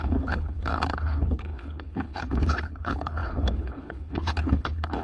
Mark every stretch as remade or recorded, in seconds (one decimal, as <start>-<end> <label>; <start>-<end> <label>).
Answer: 0.0-5.0 remade

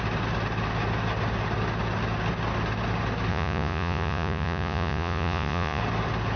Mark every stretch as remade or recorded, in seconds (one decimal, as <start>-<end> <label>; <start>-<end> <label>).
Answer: 0.0-3.3 recorded; 3.3-5.8 remade; 5.8-6.4 recorded

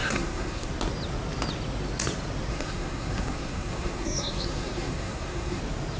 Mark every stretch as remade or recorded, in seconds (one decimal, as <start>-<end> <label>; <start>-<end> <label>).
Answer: 0.0-0.7 remade; 0.7-2.5 recorded; 2.5-5.6 remade; 5.6-6.0 recorded

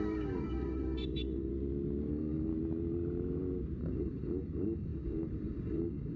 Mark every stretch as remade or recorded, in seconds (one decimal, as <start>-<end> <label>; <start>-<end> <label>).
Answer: 0.0-1.5 remade; 1.5-2.1 recorded; 2.1-2.5 remade; 2.5-3.8 recorded; 3.8-6.2 remade

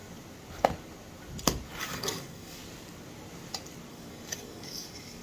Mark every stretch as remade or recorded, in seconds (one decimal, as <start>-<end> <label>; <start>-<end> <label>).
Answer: 0.0-1.8 recorded; 1.8-2.6 remade; 2.6-3.9 recorded; 3.9-5.2 remade

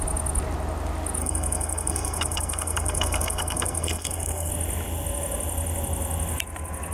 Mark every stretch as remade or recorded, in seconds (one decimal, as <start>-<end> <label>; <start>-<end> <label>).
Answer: 0.0-1.2 recorded; 1.2-4.5 remade; 4.5-6.9 recorded